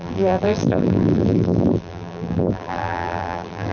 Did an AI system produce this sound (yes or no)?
yes